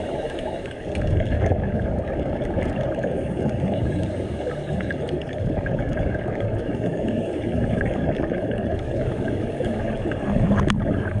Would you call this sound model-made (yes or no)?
yes